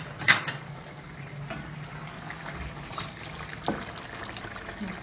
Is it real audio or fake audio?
real